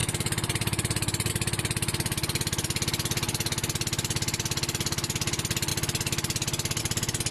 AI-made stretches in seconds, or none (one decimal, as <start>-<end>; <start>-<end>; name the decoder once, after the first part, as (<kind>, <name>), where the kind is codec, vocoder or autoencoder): none